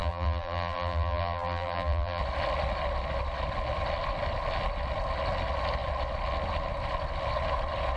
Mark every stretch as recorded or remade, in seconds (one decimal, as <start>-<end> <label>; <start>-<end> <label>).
0.0-2.2 remade; 2.2-8.0 recorded